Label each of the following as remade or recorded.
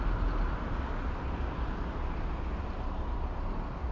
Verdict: recorded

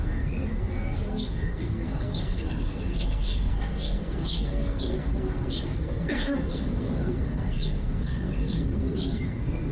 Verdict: remade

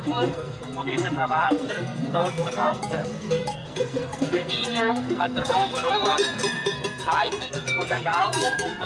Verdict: remade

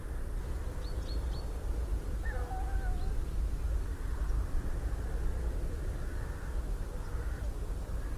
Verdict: recorded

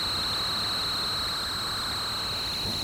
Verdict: recorded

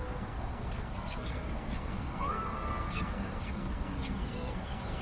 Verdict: remade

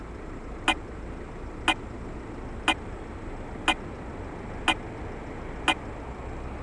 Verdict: recorded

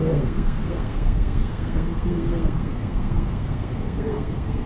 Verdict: remade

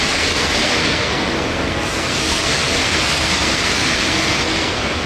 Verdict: remade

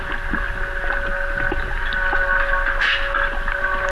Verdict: recorded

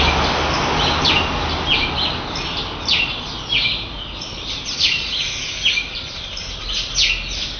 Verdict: recorded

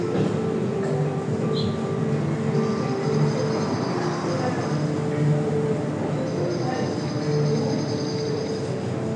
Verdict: recorded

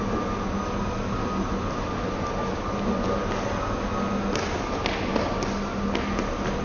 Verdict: recorded